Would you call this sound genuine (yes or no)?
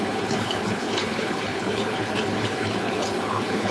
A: no